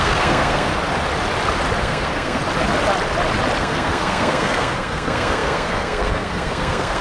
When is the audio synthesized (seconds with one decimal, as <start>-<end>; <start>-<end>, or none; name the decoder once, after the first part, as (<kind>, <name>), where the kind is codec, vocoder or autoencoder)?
0.0-0.7 (codec, SNAC); 1.8-2.4; 3.6-7.0